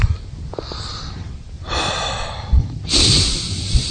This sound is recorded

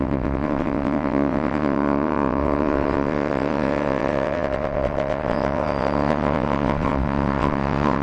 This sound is remade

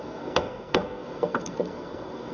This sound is remade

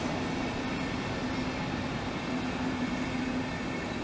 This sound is recorded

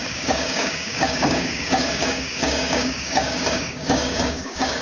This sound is remade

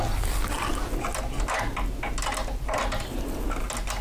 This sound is recorded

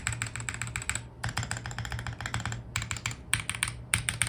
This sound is recorded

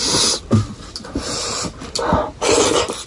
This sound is recorded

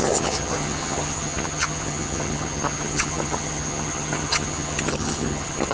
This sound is remade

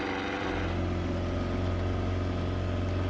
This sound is recorded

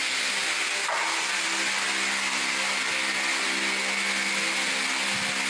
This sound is recorded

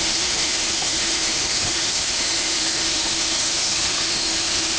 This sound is remade